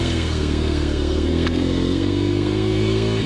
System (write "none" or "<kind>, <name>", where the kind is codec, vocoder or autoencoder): codec, SNAC